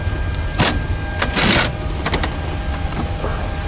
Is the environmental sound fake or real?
real